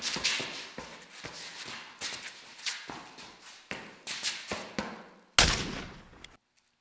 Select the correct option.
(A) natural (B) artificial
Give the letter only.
A